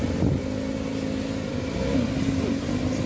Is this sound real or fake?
real